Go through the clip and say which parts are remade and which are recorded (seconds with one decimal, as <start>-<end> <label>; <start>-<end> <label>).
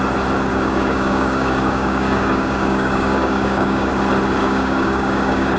0.0-0.5 recorded; 0.5-3.9 remade; 3.9-4.4 recorded; 4.4-5.6 remade